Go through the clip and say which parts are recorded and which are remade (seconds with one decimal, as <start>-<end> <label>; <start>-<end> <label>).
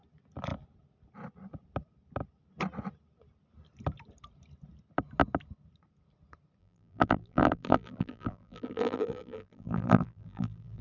0.0-6.6 recorded; 6.6-10.8 remade